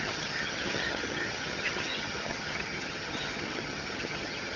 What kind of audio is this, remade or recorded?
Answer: remade